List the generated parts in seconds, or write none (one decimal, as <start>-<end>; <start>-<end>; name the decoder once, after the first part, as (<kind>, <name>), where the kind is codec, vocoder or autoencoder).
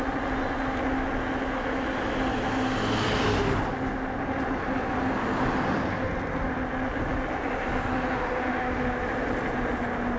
none